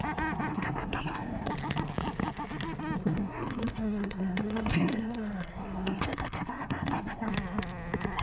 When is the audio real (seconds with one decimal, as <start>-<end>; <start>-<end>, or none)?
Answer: 0.0-0.5; 1.5-3.0; 7.3-8.2